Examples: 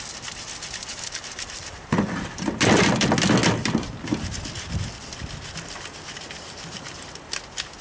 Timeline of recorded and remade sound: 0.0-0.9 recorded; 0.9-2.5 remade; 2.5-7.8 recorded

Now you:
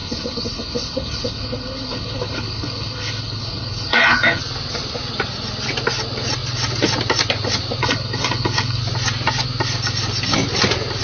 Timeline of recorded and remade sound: 0.0-4.4 remade; 4.4-7.8 recorded; 7.8-8.8 remade; 8.8-11.0 recorded

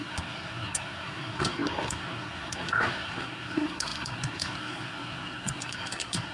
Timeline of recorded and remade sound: 0.0-6.3 remade

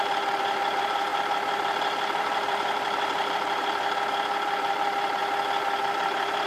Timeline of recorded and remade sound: 0.0-5.2 remade; 5.2-5.9 recorded; 5.9-6.5 remade

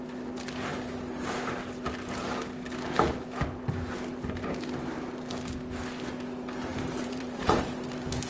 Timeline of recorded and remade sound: 0.0-6.7 recorded; 6.7-7.6 remade; 7.6-8.3 recorded

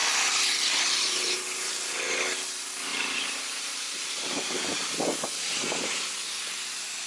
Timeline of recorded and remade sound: 0.0-1.9 remade; 1.9-2.9 recorded; 2.9-5.0 remade; 5.0-7.1 recorded

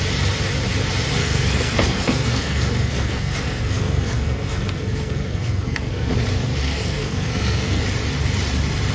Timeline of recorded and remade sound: 0.0-1.2 recorded; 1.2-6.1 remade; 6.1-6.6 recorded; 6.6-7.8 remade; 7.8-8.9 recorded